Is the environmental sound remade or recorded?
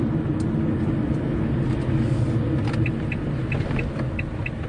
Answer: recorded